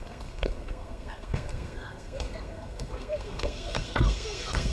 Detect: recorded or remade remade